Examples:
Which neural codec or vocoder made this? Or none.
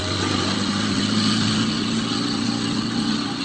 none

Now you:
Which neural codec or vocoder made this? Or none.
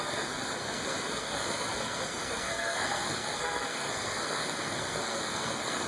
codec, SNAC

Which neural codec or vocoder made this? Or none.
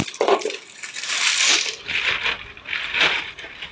none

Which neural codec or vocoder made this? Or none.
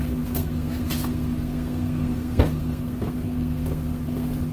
codec, SNAC